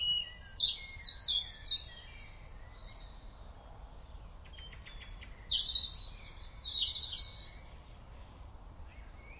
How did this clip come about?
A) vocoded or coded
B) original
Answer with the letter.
B